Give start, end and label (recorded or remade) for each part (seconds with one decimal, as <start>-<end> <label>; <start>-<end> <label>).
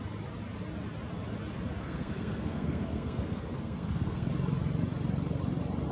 0.0-1.8 recorded; 1.8-4.3 remade; 4.3-5.9 recorded